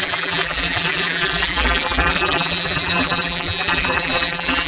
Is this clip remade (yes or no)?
yes